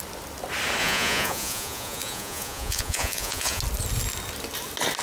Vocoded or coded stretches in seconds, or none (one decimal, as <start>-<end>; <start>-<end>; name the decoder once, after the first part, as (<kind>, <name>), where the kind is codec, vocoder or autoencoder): 0.8-3.6 (vocoder, Vocos)